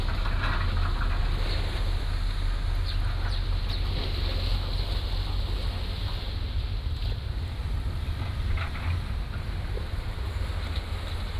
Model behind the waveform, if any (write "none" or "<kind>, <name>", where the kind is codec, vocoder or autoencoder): none